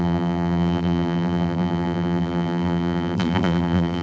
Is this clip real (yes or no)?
no